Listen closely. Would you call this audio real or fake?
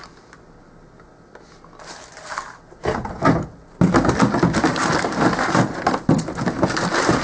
real